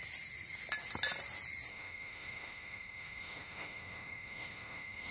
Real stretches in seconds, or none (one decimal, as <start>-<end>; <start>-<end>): 0.0-1.7